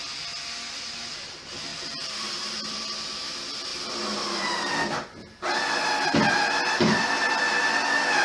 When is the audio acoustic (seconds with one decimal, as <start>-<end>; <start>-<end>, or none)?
0.0-1.7; 2.8-3.7; 4.7-8.2